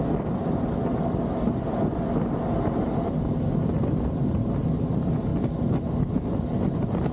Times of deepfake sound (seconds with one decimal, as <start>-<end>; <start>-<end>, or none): none